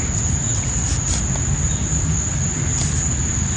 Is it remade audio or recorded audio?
recorded